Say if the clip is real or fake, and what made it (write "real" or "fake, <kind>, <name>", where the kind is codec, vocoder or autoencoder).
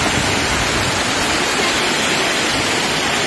real